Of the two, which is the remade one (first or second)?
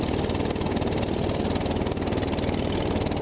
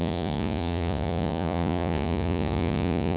second